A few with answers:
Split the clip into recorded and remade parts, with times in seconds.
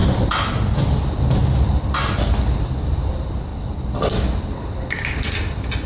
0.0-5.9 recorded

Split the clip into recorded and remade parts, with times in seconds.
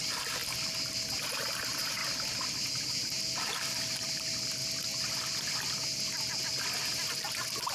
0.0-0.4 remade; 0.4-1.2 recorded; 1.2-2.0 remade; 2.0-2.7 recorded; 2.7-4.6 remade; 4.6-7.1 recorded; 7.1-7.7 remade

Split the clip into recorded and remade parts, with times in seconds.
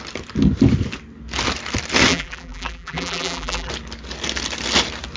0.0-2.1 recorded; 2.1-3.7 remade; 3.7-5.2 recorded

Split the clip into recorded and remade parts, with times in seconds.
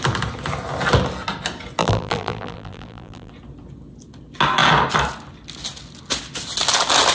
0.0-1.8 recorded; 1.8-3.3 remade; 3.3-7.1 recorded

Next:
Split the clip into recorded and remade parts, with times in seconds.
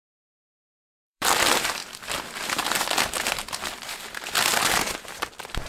0.0-1.4 remade; 1.4-1.8 recorded; 1.8-2.8 remade; 2.8-5.7 recorded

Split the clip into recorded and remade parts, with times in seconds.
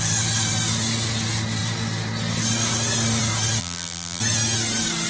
0.0-3.6 recorded; 3.6-4.2 remade; 4.2-5.1 recorded